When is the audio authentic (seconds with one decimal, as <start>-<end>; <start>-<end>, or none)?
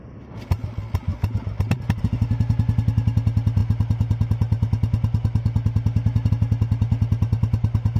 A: 0.0-8.0